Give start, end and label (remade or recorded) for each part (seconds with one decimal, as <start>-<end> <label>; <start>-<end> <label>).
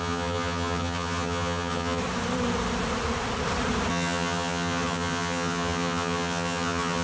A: 0.0-2.0 remade; 2.0-3.9 recorded; 3.9-7.0 remade